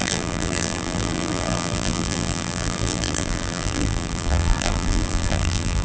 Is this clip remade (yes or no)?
yes